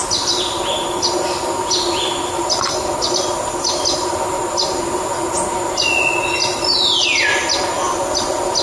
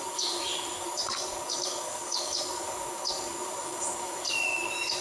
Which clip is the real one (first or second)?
first